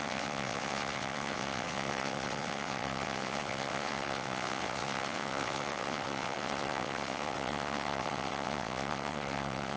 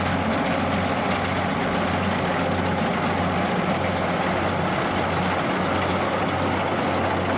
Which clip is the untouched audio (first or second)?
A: second